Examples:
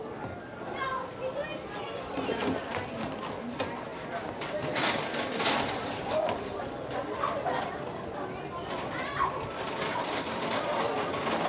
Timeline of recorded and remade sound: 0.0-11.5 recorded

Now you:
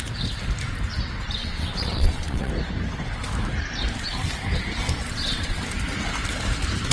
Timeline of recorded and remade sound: 0.0-1.4 recorded; 1.4-2.5 remade; 2.5-5.1 recorded; 5.1-5.6 remade; 5.6-6.9 recorded

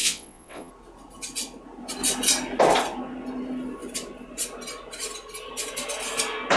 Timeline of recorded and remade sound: 0.0-0.7 remade; 0.7-6.6 recorded

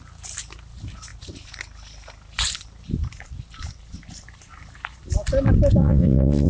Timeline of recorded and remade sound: 0.0-5.8 recorded; 5.8-6.5 remade

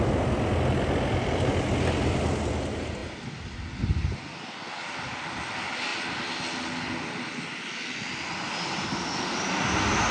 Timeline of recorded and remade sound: 0.0-10.1 recorded

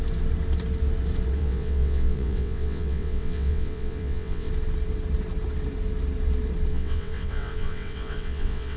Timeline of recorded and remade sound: 0.0-1.4 recorded; 1.4-4.5 remade; 4.5-6.7 recorded; 6.7-8.8 remade